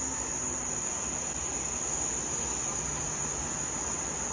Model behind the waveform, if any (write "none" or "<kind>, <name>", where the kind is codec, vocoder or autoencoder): none